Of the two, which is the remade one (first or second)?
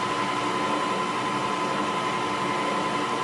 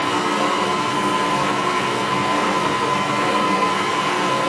second